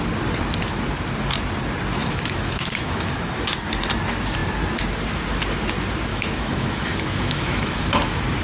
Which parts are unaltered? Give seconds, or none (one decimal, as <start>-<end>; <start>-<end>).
0.0-2.0; 3.6-6.1; 7.9-8.4